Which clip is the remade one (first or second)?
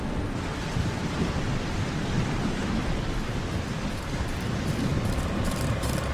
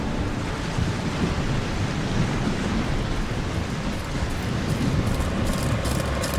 first